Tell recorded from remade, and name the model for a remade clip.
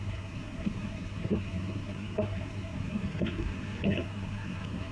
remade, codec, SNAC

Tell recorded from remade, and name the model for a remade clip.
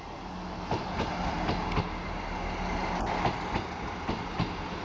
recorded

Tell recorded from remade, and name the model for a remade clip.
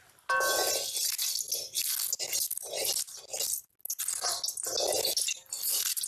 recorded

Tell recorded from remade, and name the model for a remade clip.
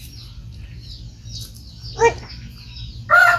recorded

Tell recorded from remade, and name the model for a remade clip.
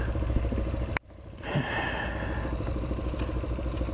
recorded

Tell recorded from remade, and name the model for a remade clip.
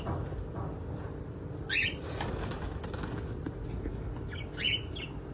recorded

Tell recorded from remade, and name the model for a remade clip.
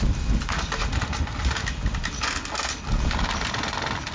recorded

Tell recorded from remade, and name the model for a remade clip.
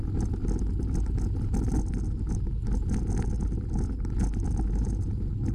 recorded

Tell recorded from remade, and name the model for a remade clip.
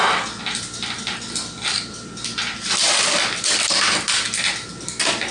recorded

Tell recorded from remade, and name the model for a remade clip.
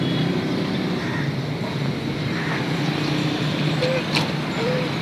recorded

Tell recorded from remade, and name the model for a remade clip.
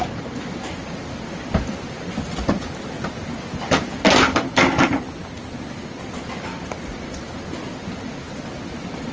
recorded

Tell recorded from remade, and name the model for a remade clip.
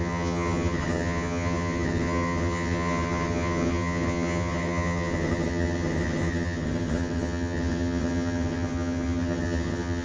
remade, vocoder, HiFi-GAN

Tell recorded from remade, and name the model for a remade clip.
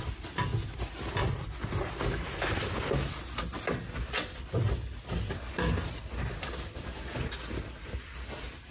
recorded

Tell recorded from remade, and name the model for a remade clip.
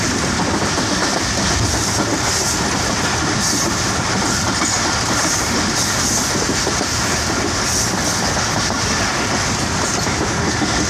recorded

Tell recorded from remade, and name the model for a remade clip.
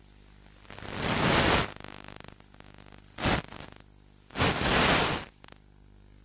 recorded